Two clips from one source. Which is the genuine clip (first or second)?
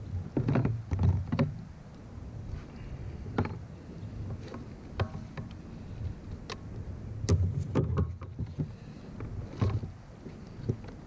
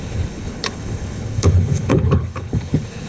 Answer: first